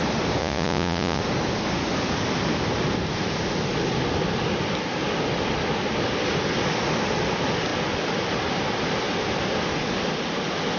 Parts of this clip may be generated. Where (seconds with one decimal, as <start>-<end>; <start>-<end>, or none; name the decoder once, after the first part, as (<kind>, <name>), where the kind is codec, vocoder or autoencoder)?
0.4-1.2 (vocoder, Vocos)